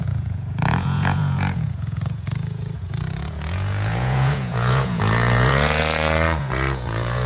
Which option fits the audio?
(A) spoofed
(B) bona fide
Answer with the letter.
A